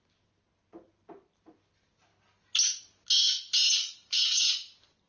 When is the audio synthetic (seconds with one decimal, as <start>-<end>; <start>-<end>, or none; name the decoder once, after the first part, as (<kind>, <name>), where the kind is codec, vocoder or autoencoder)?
3.8-4.5 (codec, DAC)